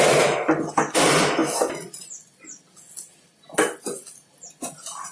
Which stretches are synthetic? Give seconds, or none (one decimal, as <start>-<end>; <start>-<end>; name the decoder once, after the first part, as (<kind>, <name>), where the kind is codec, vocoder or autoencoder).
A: none